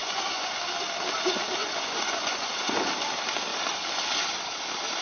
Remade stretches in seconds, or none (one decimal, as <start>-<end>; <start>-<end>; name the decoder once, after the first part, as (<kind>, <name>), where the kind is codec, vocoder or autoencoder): 0.0-0.6 (vocoder, Vocos); 1.6-2.7